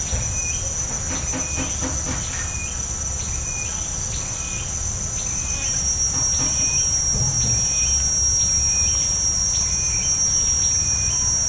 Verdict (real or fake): real